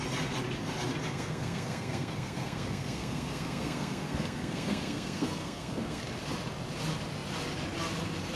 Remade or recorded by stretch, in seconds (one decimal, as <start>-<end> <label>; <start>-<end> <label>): 0.0-1.0 recorded; 1.0-6.0 remade; 6.0-8.4 recorded